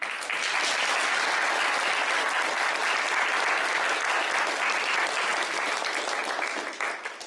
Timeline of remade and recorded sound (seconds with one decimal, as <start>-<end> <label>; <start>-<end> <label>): 0.0-7.3 recorded